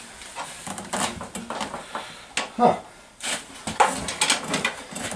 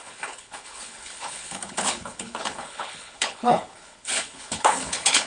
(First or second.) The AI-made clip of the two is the second